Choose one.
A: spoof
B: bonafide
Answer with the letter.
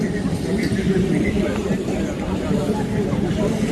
B